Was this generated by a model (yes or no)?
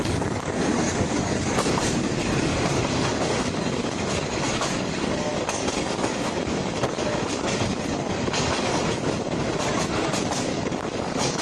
yes